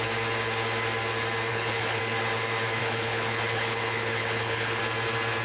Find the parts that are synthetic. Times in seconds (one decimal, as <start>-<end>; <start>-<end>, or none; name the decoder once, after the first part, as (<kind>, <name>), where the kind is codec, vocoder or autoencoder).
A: 1.5-2.0 (codec, HILCodec); 2.8-4.8